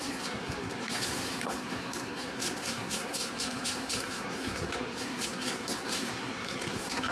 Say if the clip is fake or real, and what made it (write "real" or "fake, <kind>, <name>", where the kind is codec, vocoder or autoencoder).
fake, codec, SNAC